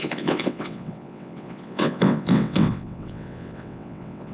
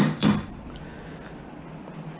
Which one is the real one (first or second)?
second